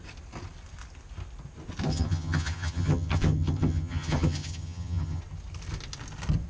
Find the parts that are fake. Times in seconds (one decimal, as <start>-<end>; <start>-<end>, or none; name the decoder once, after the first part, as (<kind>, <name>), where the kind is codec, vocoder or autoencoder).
1.9-5.2 (vocoder, HiFi-GAN)